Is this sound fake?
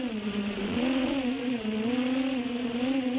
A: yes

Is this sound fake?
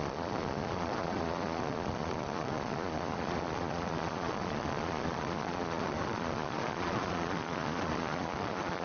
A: yes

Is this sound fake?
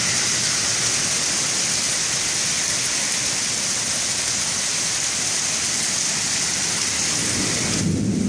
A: no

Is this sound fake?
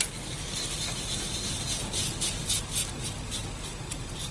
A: no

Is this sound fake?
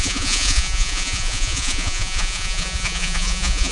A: yes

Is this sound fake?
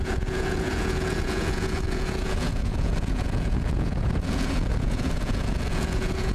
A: yes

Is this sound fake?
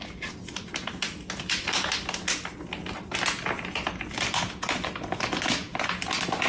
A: no